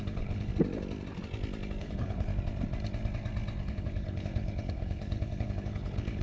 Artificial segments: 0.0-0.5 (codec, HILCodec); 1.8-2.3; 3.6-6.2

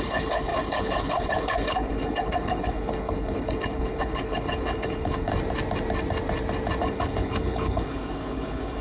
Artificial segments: 0.0-5.3 (codec, HILCodec); 6.8-8.8

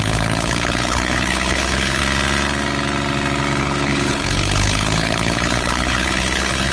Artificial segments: 0.0-2.0 (codec, HILCodec); 3.6-6.7

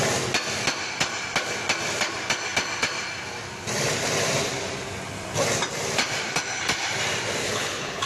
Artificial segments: 7.4-8.1 (codec, HILCodec)

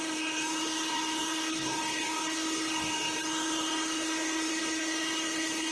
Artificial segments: 0.0-5.7 (codec, HILCodec)